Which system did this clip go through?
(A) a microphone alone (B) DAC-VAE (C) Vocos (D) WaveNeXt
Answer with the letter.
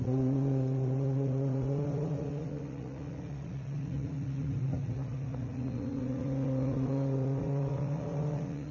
C